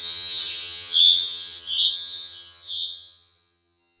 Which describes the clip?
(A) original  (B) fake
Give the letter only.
B